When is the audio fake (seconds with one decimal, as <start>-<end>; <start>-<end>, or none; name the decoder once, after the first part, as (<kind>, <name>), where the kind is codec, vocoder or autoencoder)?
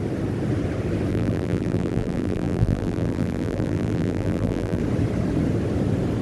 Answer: 1.1-4.8 (vocoder, BigVGAN v2)